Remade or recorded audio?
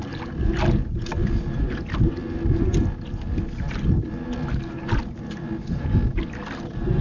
recorded